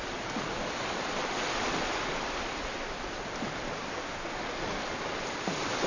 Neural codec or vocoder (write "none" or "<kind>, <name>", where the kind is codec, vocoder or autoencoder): none